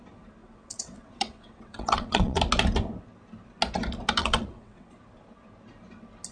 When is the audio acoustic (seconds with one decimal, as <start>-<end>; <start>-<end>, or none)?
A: 0.0-0.4; 2.4-4.2; 4.9-6.3